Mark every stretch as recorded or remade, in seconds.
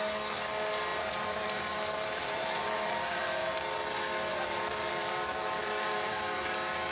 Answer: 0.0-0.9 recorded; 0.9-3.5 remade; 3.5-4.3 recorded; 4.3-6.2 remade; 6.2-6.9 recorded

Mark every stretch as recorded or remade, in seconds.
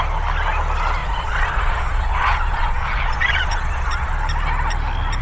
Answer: 0.0-1.0 recorded; 1.0-4.1 remade; 4.1-5.2 recorded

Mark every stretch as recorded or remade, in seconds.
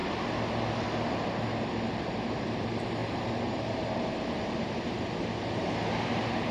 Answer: 0.0-1.9 recorded; 1.9-3.0 remade; 3.0-3.5 recorded; 3.5-6.5 remade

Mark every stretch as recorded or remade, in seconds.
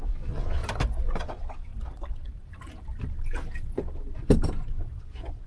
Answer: 0.0-0.6 remade; 0.6-1.2 recorded; 1.2-1.7 remade; 1.7-5.0 recorded; 5.0-5.5 remade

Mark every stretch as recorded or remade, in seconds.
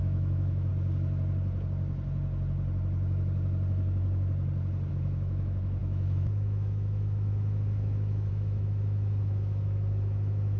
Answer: 0.0-0.7 remade; 0.7-4.9 recorded; 4.9-10.6 remade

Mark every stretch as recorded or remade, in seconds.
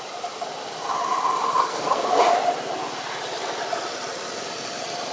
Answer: 0.0-1.7 recorded; 1.7-2.2 remade; 2.2-5.1 recorded